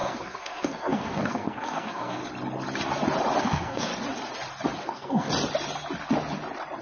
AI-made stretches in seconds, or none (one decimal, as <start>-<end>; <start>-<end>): 0.0-2.2; 3.4-3.9; 4.8-5.3

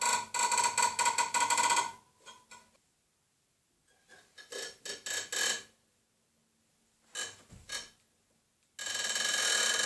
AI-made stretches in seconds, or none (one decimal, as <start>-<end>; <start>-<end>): 8.8-9.4